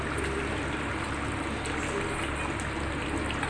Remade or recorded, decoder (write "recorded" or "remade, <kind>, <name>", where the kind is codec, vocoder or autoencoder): recorded